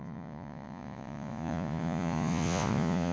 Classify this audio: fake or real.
fake